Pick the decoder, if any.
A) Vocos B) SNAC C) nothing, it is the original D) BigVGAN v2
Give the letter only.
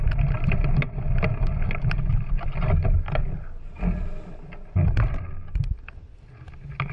C